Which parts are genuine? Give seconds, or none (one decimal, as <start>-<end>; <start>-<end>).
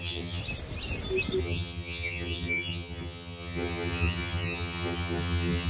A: 0.4-1.4